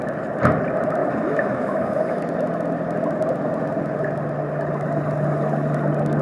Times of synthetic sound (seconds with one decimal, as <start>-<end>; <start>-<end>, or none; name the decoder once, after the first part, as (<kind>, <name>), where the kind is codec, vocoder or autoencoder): 1.0-2.2 (autoencoder, DAC-VAE)